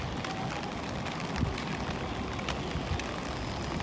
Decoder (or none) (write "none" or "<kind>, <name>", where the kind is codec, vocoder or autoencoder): none